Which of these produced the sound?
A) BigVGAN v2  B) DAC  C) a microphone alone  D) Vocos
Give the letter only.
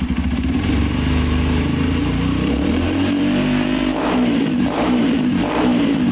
A